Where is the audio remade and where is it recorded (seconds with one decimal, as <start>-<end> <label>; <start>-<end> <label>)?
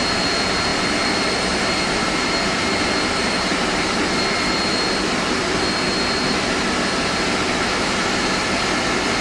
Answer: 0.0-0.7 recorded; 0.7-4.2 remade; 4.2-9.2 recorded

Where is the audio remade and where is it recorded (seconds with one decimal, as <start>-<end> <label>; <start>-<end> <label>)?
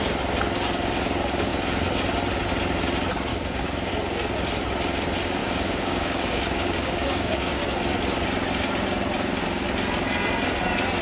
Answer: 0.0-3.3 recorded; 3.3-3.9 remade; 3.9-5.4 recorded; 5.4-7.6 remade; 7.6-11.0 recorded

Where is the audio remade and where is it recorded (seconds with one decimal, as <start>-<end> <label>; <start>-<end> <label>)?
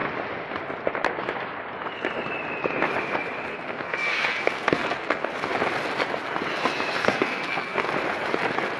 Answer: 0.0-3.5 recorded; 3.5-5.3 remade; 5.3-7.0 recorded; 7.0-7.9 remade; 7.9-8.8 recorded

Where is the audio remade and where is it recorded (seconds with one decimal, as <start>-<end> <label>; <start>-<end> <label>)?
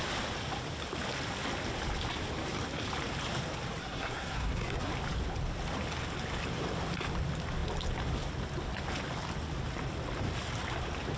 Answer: 0.0-3.8 recorded; 3.8-4.9 remade; 4.9-11.2 recorded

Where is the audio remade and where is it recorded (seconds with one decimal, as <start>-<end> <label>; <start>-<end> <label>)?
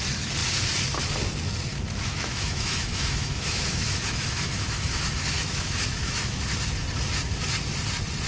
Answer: 0.0-1.7 recorded; 1.7-6.4 remade; 6.4-8.3 recorded